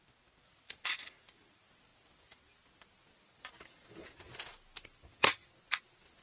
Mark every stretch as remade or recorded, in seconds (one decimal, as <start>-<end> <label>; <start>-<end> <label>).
0.0-0.4 recorded; 0.4-1.3 remade; 1.3-6.2 recorded